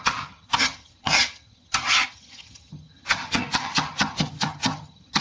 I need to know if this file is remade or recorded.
remade